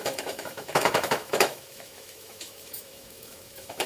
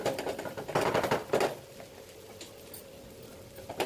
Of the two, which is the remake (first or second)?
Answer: first